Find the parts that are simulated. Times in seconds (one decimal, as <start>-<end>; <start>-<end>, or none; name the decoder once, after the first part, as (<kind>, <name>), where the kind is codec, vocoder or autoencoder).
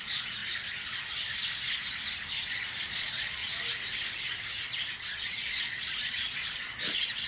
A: 0.0-0.4 (vocoder, Vocos); 2.8-3.4; 4.9-7.3